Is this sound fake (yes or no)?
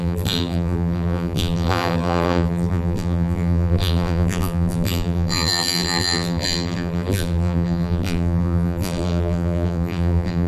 yes